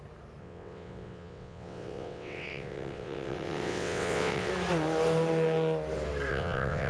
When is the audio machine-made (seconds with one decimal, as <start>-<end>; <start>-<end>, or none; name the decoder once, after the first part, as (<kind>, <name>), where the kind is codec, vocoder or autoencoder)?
0.4-4.5 (vocoder, WaveNeXt); 6.3-6.9